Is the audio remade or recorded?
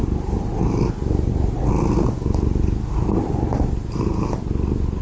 recorded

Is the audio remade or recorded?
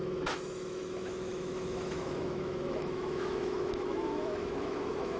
remade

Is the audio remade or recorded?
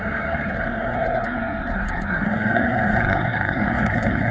remade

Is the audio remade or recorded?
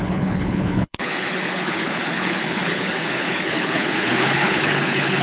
remade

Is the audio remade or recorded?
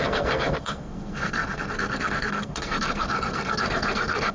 remade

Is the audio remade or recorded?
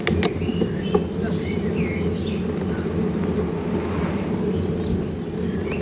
recorded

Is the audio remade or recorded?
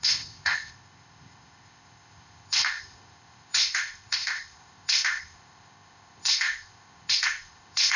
remade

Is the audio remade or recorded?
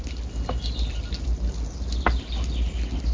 recorded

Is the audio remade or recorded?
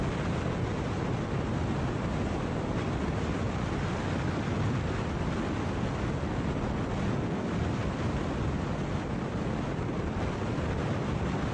recorded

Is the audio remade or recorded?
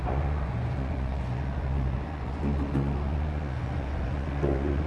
remade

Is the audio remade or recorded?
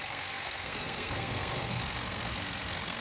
remade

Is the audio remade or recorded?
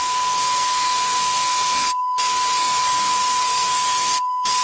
remade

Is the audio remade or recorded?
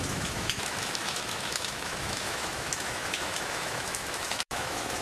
remade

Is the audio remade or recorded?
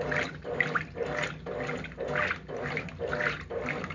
recorded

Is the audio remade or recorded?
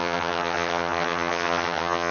remade